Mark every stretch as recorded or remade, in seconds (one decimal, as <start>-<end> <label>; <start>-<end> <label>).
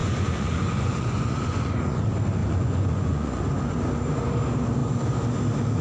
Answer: 0.0-2.0 remade; 2.0-2.4 recorded; 2.4-3.4 remade; 3.4-5.8 recorded